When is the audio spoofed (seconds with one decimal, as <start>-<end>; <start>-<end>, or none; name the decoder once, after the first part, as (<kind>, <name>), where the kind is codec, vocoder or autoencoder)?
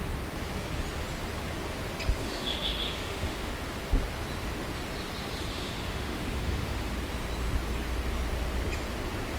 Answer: 2.2-3.5 (autoencoder, DAC-VAE); 5.5-6.9